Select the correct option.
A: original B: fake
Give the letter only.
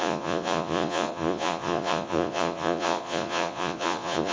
B